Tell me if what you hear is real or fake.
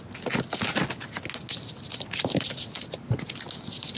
real